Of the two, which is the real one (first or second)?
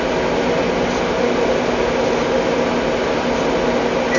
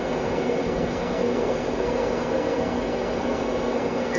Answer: first